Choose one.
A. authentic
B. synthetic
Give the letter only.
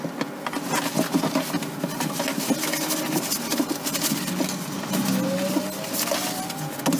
A